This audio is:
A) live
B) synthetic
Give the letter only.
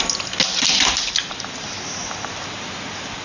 A